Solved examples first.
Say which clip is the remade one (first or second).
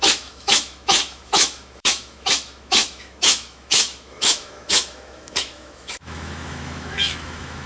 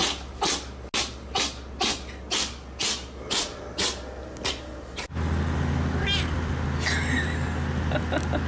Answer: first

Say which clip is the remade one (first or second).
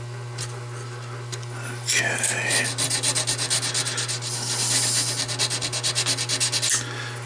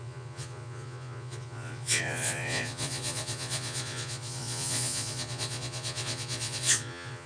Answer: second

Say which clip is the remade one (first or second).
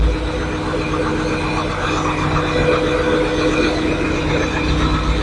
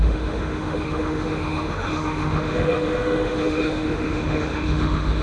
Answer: second